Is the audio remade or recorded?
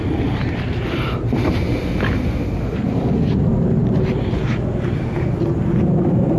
recorded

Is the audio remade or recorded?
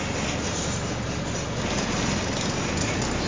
recorded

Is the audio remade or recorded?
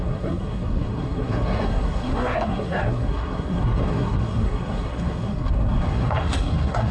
remade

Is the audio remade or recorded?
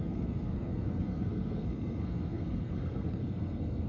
remade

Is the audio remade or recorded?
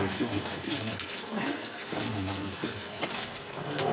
remade